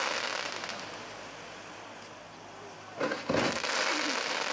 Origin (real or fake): real